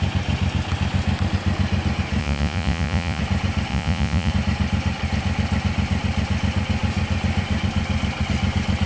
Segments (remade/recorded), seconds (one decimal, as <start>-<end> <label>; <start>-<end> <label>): 0.0-2.2 recorded; 2.2-3.2 remade; 3.2-3.7 recorded; 3.7-4.3 remade; 4.3-8.9 recorded